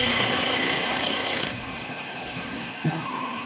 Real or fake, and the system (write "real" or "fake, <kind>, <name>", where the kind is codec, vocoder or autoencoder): fake, codec, SNAC